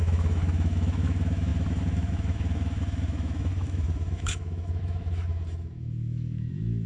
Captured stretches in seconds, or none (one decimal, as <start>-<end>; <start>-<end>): none